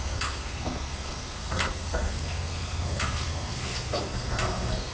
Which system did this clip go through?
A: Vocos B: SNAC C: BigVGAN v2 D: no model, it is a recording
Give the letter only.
B